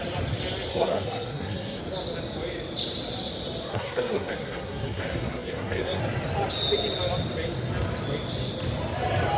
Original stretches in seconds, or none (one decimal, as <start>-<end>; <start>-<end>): 0.0-0.7; 1.8-3.7; 6.0-9.4